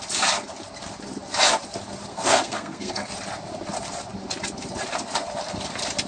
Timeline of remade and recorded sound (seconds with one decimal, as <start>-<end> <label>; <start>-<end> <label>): 0.0-2.1 recorded; 2.1-3.1 remade; 3.1-6.1 recorded